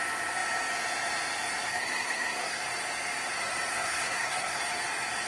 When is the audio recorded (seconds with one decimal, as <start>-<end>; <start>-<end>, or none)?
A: 0.0-1.7; 2.7-3.7; 4.6-5.3